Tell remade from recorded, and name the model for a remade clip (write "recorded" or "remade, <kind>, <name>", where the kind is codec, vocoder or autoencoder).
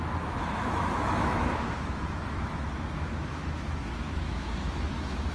remade, autoencoder, DAC-VAE